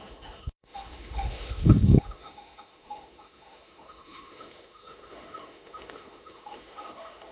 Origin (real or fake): fake